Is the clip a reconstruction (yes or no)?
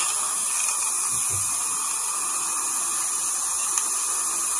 no